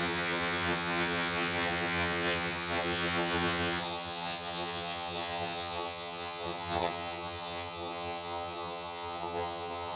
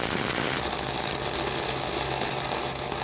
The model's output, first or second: first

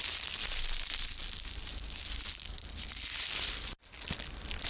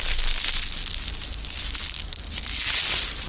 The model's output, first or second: first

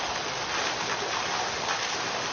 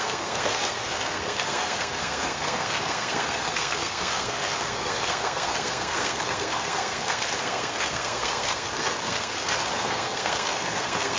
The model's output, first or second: second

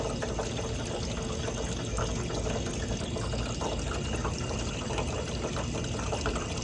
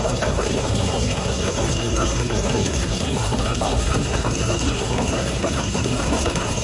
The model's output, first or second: second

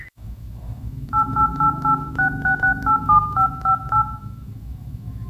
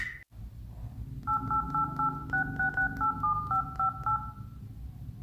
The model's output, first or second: first